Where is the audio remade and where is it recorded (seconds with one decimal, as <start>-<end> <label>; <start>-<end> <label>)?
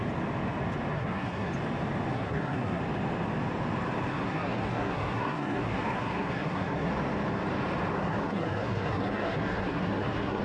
0.0-0.9 recorded; 0.9-1.5 remade; 1.5-2.1 recorded; 2.1-2.8 remade; 2.8-4.1 recorded; 4.1-6.9 remade; 6.9-8.0 recorded; 8.0-10.4 remade